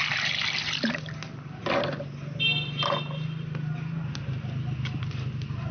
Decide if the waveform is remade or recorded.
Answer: recorded